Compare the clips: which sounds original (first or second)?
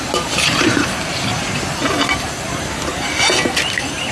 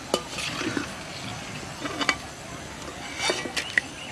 second